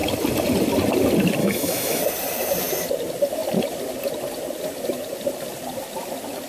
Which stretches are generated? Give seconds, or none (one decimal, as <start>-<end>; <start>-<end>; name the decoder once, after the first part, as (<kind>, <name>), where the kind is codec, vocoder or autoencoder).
1.4-2.0 (autoencoder, DAC-VAE)